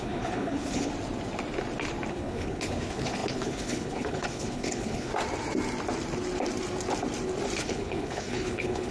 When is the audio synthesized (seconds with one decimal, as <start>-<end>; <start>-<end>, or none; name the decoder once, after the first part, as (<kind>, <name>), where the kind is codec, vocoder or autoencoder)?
0.0-0.9 (codec, HILCodec); 2.1-5.1; 7.6-8.9